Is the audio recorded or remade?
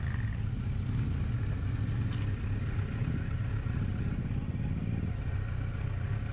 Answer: recorded